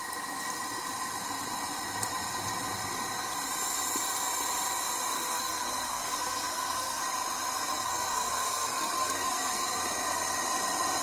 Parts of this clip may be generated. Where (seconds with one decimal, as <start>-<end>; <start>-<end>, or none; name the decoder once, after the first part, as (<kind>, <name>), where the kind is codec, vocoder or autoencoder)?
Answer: 5.1-7.0 (codec, SNAC); 7.7-9.8